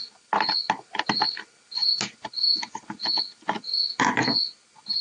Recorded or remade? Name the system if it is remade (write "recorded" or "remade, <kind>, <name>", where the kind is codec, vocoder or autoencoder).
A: recorded